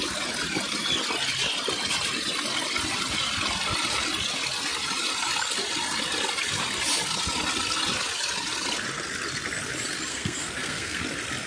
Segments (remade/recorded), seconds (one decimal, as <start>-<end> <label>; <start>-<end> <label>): 0.0-10.1 recorded; 10.1-11.0 remade; 11.0-11.5 recorded